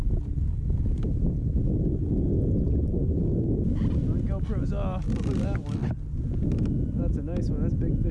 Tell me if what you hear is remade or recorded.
recorded